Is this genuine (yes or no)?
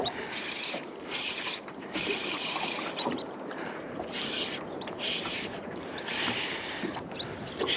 no